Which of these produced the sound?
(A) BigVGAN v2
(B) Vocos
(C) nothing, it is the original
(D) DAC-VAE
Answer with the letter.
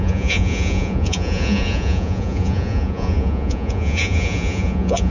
B